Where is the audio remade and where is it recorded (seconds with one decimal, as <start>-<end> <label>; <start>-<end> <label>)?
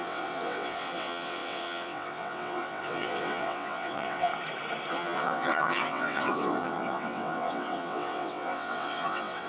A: 0.0-4.3 remade; 4.3-4.9 recorded; 4.9-9.5 remade